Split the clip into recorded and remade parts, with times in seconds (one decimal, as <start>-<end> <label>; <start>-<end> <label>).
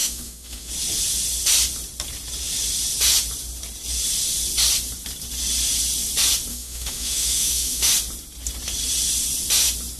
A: 0.0-0.7 remade; 0.7-6.5 recorded; 6.5-7.9 remade; 7.9-10.0 recorded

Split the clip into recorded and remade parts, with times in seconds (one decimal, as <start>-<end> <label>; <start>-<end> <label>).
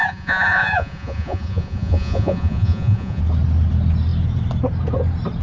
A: 0.0-3.2 remade; 3.2-5.4 recorded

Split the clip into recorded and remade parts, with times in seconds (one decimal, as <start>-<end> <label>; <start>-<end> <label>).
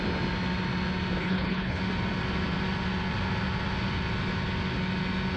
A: 0.0-1.2 recorded; 1.2-1.8 remade; 1.8-5.4 recorded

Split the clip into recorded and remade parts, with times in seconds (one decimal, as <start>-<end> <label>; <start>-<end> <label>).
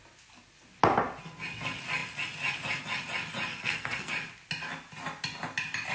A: 0.0-3.5 recorded; 3.5-4.1 remade; 4.1-5.9 recorded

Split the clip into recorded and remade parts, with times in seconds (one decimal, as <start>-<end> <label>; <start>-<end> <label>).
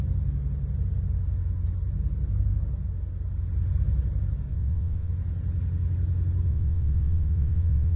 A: 0.0-4.5 recorded; 4.5-5.1 remade; 5.1-6.5 recorded; 6.5-8.0 remade